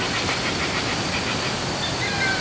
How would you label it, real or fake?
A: real